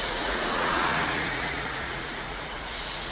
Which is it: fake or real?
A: fake